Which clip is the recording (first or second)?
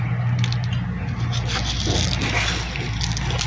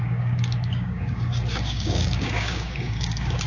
first